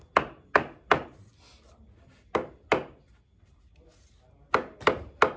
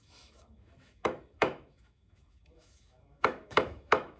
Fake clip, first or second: second